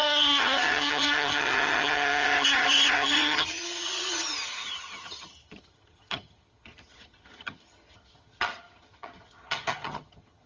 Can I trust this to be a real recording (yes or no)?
no